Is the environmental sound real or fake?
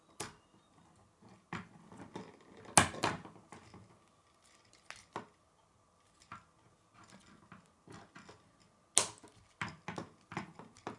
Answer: real